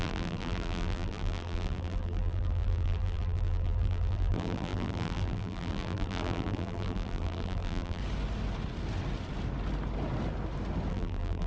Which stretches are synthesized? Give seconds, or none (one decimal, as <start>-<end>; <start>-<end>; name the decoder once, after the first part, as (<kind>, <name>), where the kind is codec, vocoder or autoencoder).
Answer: 0.0-8.0 (vocoder, BigVGAN v2); 10.9-11.5